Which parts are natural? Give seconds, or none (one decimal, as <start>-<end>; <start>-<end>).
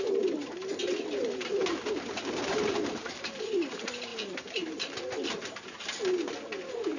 0.0-4.1; 6.0-7.0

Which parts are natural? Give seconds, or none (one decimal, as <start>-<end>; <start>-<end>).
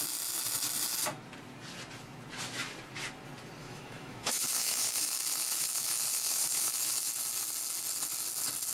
0.0-3.6; 7.1-8.7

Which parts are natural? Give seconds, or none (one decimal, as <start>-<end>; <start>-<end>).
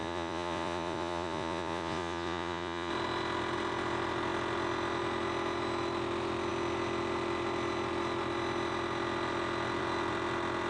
2.9-10.7